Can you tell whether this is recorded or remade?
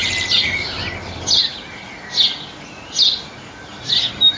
recorded